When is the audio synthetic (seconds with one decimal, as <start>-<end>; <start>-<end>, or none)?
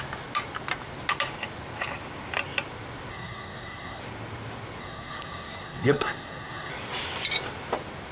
3.1-4.0; 4.8-6.7